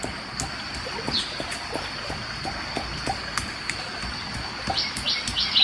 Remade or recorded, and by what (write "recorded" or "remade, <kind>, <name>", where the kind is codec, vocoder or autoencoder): recorded